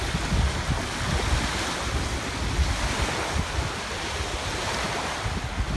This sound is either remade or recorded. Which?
recorded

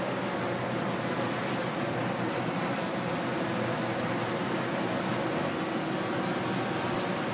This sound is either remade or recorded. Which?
recorded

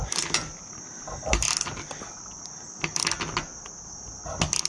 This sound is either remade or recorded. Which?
recorded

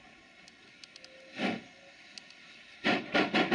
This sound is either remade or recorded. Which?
recorded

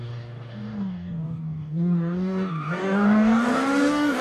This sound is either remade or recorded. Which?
remade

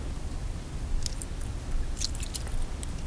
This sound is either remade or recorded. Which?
recorded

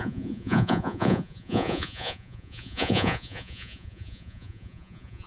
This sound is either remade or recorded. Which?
remade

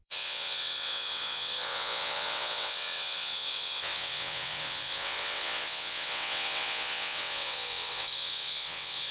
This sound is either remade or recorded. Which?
remade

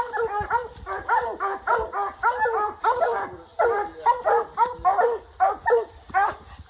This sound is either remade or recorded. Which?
recorded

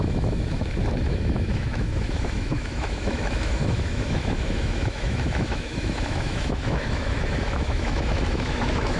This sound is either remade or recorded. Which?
remade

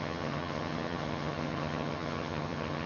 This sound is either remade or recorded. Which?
remade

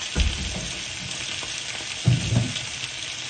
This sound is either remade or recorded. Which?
recorded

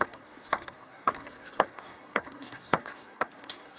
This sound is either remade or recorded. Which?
remade